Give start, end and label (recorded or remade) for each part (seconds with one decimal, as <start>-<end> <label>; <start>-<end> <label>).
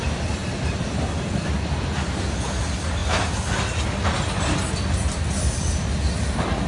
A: 0.0-6.7 recorded